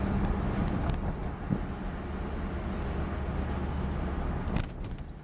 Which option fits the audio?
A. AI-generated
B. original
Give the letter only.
B